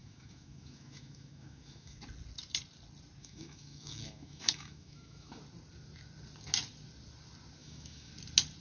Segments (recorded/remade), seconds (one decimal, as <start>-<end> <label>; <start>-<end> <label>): 0.0-2.0 remade; 2.0-3.2 recorded; 3.2-5.4 remade; 5.4-7.6 recorded; 7.6-8.1 remade; 8.1-8.6 recorded